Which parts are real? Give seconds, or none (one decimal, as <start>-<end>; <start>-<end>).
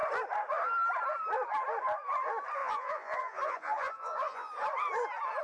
0.0-2.6; 4.5-5.4